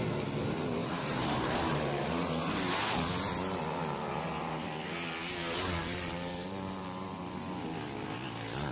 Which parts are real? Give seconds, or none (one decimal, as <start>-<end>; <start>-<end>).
0.0-0.8; 2.1-5.8; 7.2-8.7